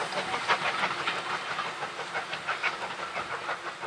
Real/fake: real